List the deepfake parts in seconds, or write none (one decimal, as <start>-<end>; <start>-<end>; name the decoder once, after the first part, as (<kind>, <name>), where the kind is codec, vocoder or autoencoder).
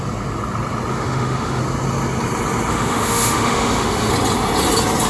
0.9-1.6 (autoencoder, DAC-VAE); 2.7-4.1